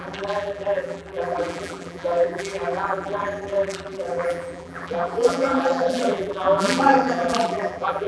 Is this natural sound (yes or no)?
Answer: no